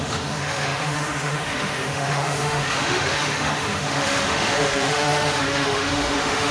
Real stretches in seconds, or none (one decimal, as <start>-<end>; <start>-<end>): none